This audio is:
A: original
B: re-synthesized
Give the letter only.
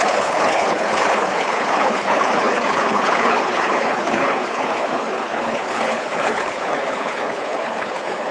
B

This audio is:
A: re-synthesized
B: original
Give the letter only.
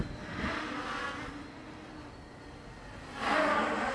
B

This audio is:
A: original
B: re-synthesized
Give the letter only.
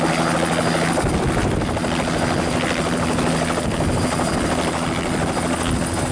A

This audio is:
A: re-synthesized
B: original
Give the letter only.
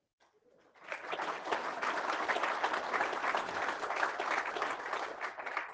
B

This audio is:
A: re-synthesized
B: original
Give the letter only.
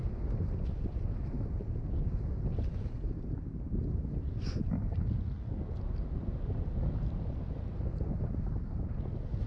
B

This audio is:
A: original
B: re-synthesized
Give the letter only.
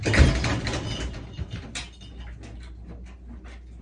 A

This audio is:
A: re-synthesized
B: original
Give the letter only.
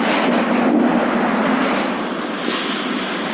B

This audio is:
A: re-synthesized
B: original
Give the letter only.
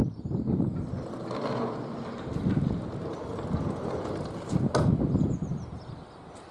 B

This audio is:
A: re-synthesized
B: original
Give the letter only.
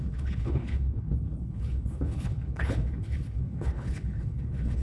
A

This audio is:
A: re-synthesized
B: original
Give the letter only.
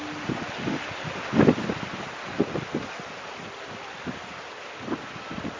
B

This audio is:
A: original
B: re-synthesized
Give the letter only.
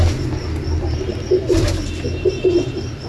A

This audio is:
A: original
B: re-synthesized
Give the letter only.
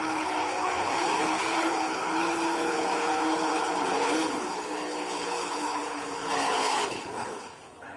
B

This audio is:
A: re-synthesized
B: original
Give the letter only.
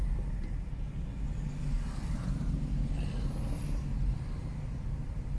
B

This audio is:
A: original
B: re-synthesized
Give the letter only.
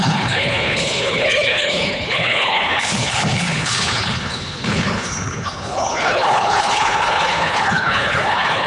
B